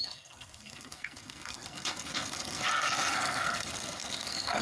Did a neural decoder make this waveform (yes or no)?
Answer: yes